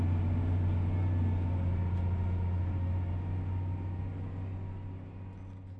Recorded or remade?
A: recorded